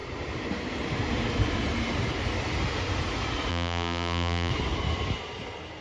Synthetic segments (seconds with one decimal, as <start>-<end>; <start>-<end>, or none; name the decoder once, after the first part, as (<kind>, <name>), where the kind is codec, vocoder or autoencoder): 3.5-4.5 (vocoder, BigVGAN v2)